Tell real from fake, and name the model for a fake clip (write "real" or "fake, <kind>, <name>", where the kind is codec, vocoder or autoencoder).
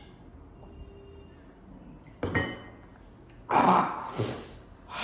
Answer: real